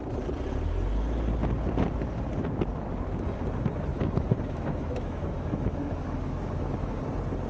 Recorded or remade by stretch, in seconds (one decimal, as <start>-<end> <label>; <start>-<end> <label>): 0.0-3.9 recorded; 3.9-7.0 remade; 7.0-7.5 recorded